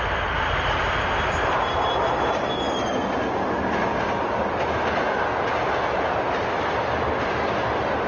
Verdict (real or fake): real